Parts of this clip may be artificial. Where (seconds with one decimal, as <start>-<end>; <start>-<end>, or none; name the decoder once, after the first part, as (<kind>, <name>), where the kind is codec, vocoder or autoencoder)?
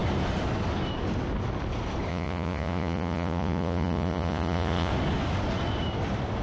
2.1-4.9 (vocoder, Vocos)